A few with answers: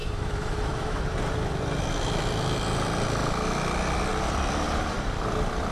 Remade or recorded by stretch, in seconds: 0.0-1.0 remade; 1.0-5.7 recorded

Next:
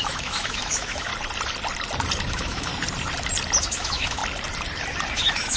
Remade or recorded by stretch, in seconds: 0.0-1.1 remade; 1.1-2.3 recorded; 2.3-2.7 remade; 2.7-3.6 recorded; 3.6-4.2 remade; 4.2-5.1 recorded; 5.1-5.6 remade